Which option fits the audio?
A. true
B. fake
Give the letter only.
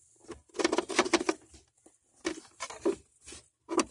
A